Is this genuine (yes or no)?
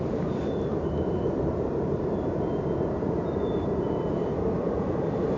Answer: no